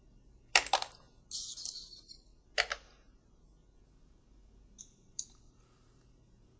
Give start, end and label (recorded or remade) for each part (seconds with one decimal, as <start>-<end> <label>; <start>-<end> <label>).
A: 0.0-0.5 remade; 0.5-1.7 recorded; 1.7-2.3 remade; 2.3-4.8 recorded; 4.8-6.6 remade